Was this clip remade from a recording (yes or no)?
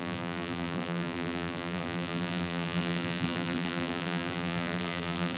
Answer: yes